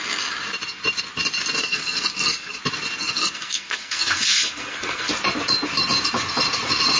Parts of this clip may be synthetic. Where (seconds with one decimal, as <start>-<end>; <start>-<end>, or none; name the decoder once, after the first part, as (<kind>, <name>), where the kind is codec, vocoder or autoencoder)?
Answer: 1.6-2.6 (codec, SNAC); 3.0-5.1